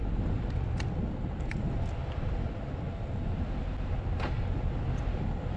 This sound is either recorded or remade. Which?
recorded